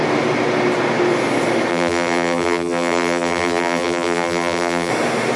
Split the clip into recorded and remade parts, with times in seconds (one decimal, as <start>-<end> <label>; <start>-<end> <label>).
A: 0.0-1.7 recorded; 1.7-4.9 remade; 4.9-5.4 recorded